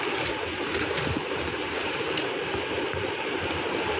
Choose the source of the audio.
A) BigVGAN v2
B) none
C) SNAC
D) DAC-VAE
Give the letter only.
A